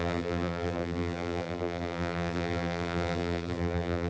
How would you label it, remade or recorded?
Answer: remade